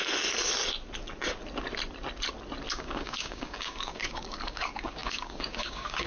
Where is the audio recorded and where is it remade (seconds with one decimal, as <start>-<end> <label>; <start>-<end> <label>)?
0.0-2.7 recorded; 2.7-6.1 remade